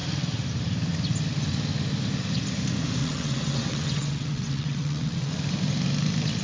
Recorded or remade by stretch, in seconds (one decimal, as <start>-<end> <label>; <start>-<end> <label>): 0.0-3.0 recorded; 3.0-5.3 remade; 5.3-6.4 recorded